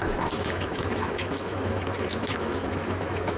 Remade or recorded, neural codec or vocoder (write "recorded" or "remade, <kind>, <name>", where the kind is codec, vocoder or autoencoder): remade, autoencoder, DAC-VAE